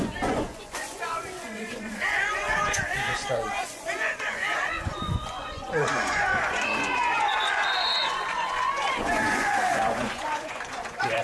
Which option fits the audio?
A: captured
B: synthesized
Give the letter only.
B